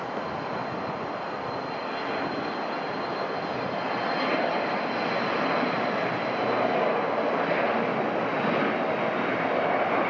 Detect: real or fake real